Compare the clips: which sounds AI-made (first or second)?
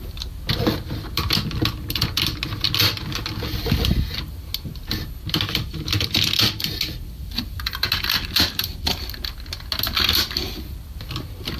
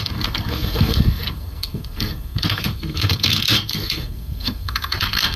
second